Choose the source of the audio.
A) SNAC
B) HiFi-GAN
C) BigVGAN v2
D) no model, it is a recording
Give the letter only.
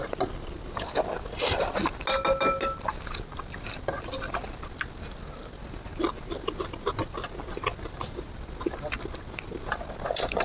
D